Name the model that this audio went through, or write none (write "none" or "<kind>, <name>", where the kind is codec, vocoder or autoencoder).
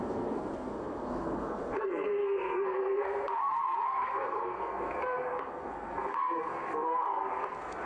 codec, SNAC